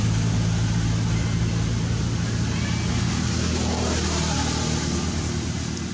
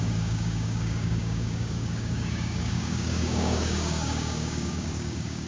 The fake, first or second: second